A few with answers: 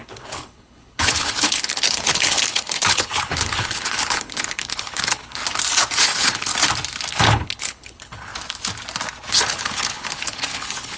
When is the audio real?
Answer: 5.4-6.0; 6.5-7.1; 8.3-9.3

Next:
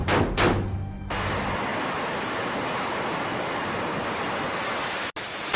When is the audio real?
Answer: 0.0-5.6

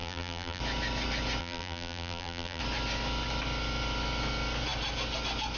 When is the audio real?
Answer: 0.6-1.4; 2.6-5.6

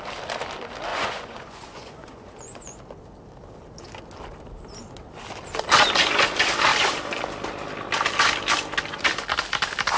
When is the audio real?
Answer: 0.0-0.9; 2.8-10.0